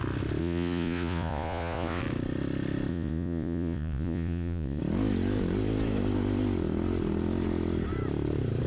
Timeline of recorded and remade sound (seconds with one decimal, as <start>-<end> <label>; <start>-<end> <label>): 0.0-0.4 recorded; 0.4-2.0 remade; 2.0-2.9 recorded; 2.9-4.8 remade; 4.8-8.7 recorded